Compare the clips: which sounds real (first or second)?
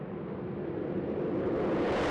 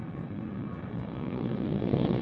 first